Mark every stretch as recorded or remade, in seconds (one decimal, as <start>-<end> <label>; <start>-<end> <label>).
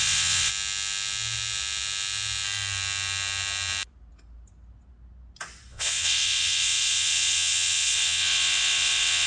0.0-0.5 remade; 0.5-5.7 recorded; 5.7-9.3 remade